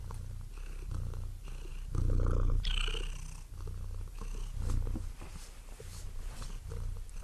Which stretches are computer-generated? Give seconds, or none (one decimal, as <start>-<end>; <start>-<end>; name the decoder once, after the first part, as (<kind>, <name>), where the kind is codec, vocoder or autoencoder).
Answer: none